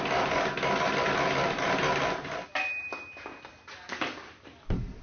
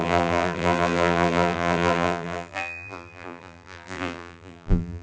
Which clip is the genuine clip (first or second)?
first